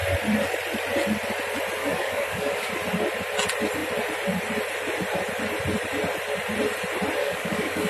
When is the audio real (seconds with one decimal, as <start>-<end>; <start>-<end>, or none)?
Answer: 0.0-1.8; 2.7-7.2